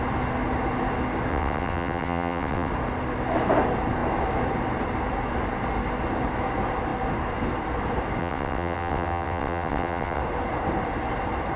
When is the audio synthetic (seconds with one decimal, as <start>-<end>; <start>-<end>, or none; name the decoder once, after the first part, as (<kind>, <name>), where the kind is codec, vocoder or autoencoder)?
1.3-2.7 (vocoder, WaveNeXt); 8.2-10.2